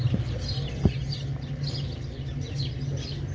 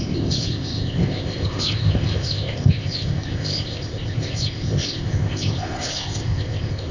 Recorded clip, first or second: first